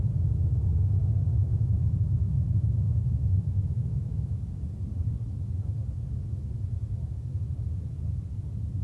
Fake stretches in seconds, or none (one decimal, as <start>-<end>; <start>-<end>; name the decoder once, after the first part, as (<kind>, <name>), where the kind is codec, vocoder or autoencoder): 1.4-4.4 (autoencoder, DAC-VAE)